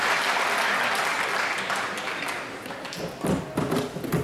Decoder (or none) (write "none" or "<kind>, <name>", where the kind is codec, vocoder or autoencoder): none